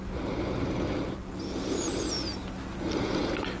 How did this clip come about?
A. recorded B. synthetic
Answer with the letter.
A